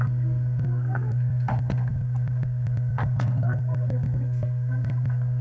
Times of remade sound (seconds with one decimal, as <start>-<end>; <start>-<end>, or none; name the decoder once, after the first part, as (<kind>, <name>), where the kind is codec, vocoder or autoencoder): 0.0-5.4 (codec, SNAC)